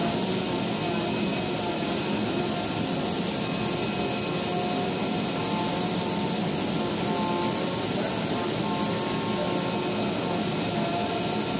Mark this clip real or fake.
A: real